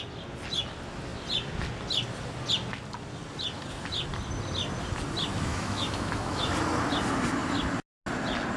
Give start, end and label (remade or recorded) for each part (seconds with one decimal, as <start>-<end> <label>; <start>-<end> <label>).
0.0-5.5 recorded; 5.5-6.5 remade; 6.5-8.6 recorded